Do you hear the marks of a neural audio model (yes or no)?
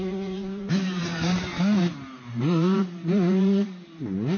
yes